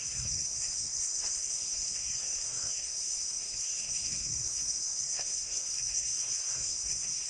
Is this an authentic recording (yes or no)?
no